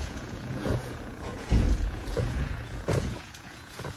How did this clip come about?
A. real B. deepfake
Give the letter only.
B